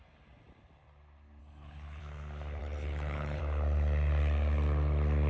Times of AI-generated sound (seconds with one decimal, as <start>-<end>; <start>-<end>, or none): 1.4-2.0; 2.6-3.4